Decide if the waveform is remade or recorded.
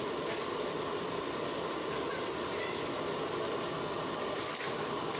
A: recorded